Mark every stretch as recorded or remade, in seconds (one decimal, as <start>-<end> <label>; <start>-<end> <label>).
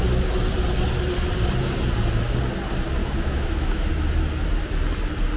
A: 0.0-3.0 recorded; 3.0-3.9 remade; 3.9-5.4 recorded